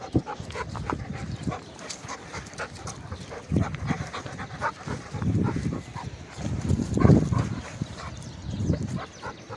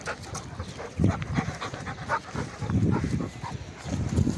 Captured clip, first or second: second